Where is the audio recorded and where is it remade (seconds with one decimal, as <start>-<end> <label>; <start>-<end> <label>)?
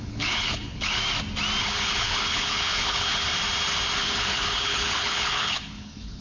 0.0-1.0 remade; 1.0-1.6 recorded; 1.6-3.3 remade; 3.3-4.0 recorded; 4.0-6.2 remade